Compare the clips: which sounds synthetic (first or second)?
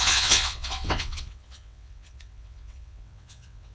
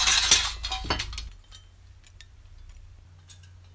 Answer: first